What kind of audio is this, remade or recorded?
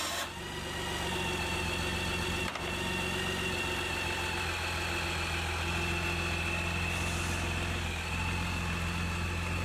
recorded